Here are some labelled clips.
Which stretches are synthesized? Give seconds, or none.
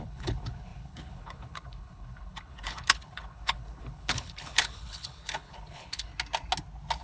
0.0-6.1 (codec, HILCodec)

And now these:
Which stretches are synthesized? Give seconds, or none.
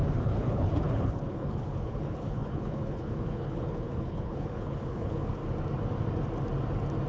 0.0-5.4 (codec, HILCodec)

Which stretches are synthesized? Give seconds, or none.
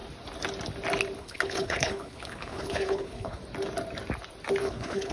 1.2-3.4 (codec, HILCodec); 4.6-5.1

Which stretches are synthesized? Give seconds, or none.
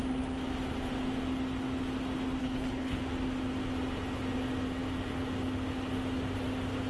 2.4-3.0 (codec, HILCodec)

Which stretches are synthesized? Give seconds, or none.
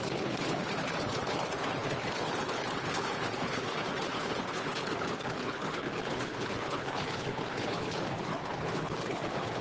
0.0-9.6 (codec, HILCodec)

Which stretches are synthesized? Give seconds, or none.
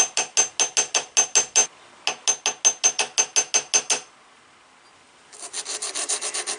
none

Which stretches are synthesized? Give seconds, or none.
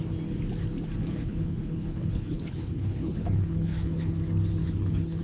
1.0-4.1 (codec, HILCodec); 4.6-5.2